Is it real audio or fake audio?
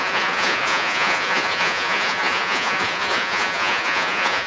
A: fake